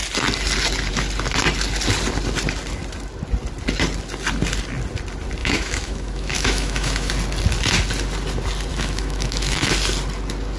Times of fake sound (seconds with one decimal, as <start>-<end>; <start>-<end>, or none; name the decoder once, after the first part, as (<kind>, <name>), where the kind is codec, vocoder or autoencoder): 5.4-7.1 (autoencoder, DAC-VAE); 8.7-9.7